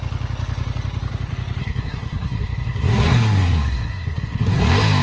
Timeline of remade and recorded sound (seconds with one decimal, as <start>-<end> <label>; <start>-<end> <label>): 0.0-1.6 recorded; 1.6-4.6 remade; 4.6-5.0 recorded